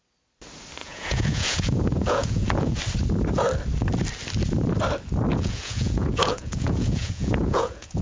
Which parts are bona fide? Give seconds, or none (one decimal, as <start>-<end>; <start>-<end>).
0.0-0.8; 2.8-5.3